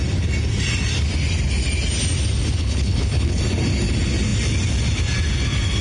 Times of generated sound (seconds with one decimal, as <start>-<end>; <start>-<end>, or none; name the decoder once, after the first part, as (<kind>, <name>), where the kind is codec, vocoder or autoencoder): 2.6-3.4 (codec, HILCodec)